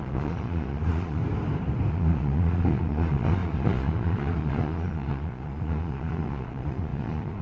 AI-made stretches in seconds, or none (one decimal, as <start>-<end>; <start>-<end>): 0.0-1.2; 1.9-7.4